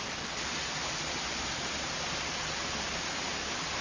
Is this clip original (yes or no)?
yes